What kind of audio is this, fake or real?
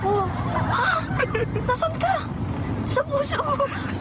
real